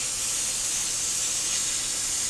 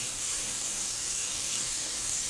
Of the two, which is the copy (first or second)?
second